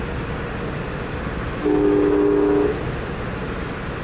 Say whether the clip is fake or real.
real